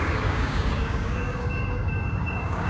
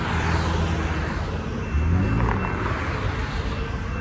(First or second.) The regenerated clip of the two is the first